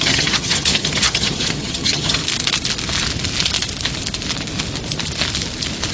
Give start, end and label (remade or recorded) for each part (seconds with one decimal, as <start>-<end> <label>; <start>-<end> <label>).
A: 0.0-2.2 remade; 2.2-5.9 recorded

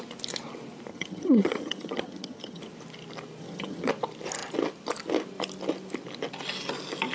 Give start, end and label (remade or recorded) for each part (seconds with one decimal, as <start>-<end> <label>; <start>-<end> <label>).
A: 0.0-0.9 recorded; 0.9-2.6 remade; 2.6-3.4 recorded; 3.4-3.9 remade; 3.9-7.1 recorded

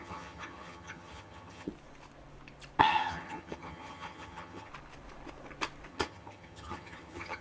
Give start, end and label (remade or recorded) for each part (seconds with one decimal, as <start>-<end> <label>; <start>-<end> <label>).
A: 0.0-1.7 remade; 1.7-2.8 recorded; 2.8-4.7 remade; 4.7-5.9 recorded; 5.9-7.4 remade

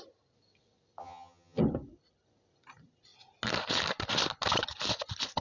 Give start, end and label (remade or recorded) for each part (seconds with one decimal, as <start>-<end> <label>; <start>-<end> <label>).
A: 0.0-1.0 recorded; 1.0-1.6 remade; 1.6-5.4 recorded

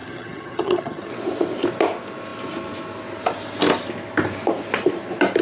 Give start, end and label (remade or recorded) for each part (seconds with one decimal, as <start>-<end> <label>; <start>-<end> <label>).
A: 0.0-1.1 remade; 1.1-5.4 recorded

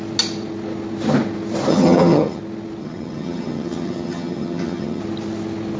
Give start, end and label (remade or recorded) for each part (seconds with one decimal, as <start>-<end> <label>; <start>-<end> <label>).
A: 0.0-1.7 recorded; 1.7-2.4 remade; 2.4-2.8 recorded; 2.8-5.0 remade; 5.0-5.8 recorded